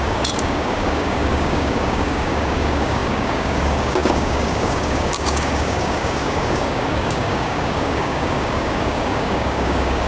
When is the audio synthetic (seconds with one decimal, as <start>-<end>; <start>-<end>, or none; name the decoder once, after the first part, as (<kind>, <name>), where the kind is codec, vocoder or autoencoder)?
0.0-10.1 (codec, DAC)